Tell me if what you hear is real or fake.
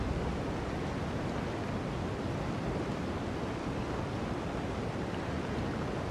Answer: real